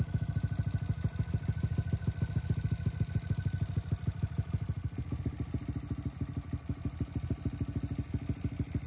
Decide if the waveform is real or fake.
real